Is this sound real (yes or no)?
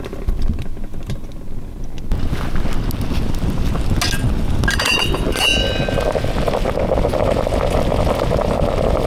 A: yes